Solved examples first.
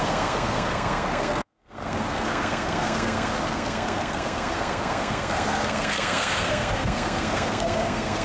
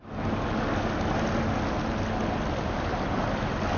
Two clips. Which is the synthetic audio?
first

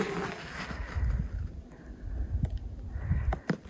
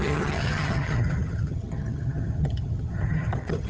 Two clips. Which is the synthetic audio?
second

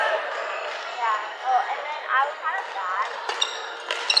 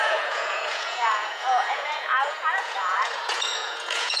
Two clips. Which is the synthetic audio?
second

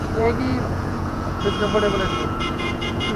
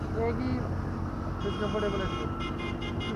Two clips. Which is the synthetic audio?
first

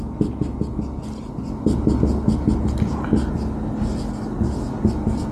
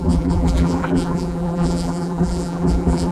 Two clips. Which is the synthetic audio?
second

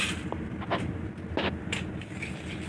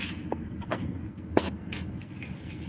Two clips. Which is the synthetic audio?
second